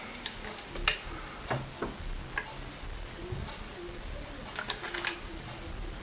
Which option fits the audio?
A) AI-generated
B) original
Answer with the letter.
B